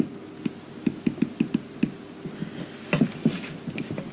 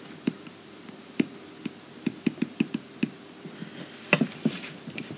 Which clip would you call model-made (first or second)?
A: second